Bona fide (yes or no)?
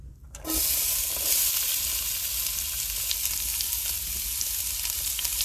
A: yes